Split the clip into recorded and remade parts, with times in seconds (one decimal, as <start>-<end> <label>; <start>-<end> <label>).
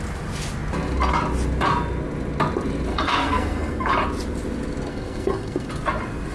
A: 0.0-2.9 recorded; 2.9-3.9 remade; 3.9-4.9 recorded; 4.9-5.7 remade; 5.7-6.3 recorded